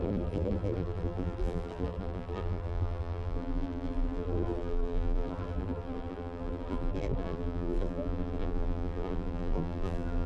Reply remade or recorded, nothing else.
remade